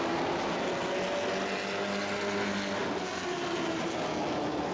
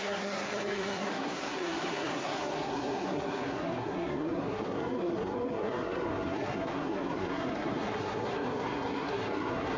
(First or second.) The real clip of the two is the first